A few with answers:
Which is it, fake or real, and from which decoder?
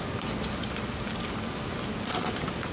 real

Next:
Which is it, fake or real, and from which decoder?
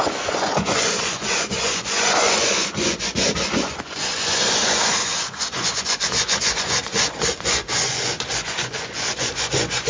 fake, vocoder, Vocos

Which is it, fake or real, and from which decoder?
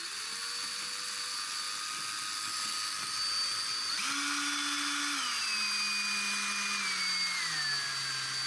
real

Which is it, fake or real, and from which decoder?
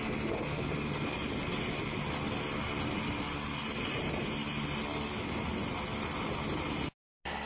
real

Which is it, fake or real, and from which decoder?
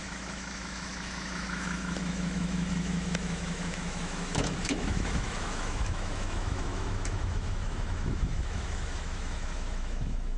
fake, autoencoder, DAC-VAE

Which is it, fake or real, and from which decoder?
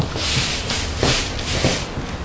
fake, vocoder, BigVGAN v2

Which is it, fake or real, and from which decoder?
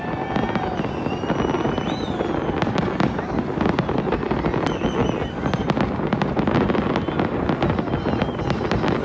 real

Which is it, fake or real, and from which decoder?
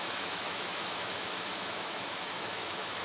fake, autoencoder, DAC-VAE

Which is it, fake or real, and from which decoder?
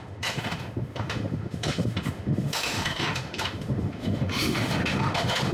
fake, autoencoder, DAC-VAE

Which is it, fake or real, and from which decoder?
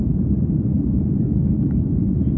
fake, vocoder, BigVGAN v2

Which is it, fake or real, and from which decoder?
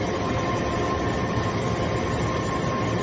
fake, vocoder, BigVGAN v2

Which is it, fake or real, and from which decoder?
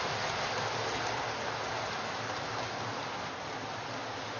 real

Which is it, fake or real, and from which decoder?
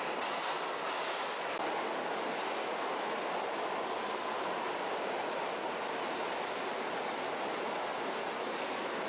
real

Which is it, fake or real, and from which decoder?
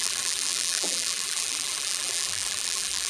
fake, vocoder, BigVGAN v2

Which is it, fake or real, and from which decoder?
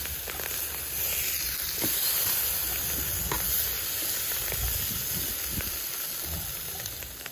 real